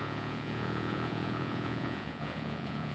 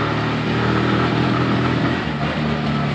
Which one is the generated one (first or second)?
first